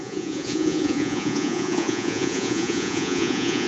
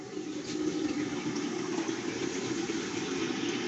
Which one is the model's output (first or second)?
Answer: first